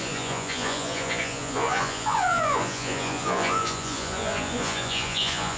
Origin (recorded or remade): remade